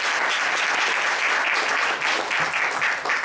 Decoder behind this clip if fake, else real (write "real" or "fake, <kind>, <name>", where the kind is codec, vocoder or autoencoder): real